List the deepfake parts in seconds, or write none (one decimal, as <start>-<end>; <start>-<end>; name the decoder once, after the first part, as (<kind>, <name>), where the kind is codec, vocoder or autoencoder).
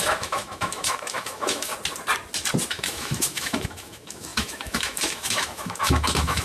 0.0-1.7 (autoencoder, DAC-VAE); 2.7-6.4